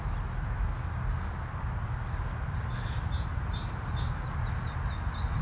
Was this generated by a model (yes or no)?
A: no